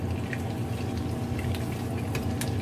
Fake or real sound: real